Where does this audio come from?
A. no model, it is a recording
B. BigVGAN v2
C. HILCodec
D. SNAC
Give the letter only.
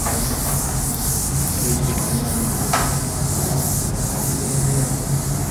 A